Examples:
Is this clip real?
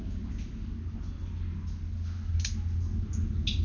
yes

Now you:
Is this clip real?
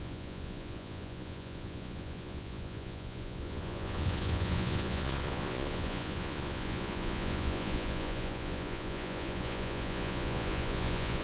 no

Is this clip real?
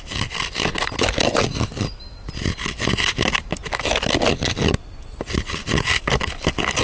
yes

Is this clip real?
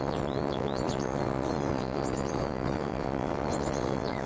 no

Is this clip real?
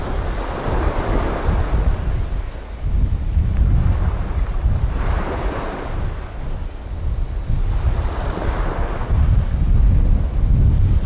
yes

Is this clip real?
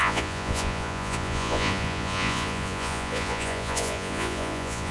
no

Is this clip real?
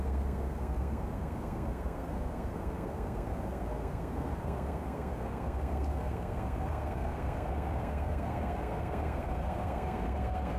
no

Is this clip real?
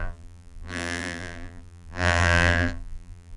no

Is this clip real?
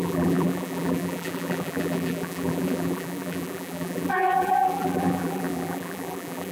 no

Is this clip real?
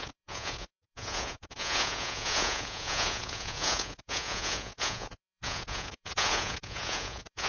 no